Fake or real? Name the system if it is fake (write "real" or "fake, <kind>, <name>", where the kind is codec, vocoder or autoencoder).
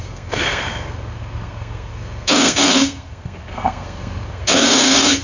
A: fake, codec, SNAC